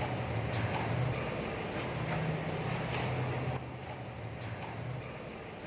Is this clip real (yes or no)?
yes